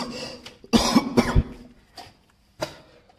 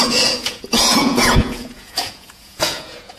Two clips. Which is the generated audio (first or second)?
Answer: second